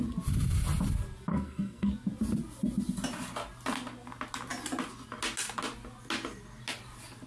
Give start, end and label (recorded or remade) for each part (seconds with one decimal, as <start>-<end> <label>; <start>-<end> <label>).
0.0-1.3 recorded; 1.3-1.9 remade; 1.9-7.3 recorded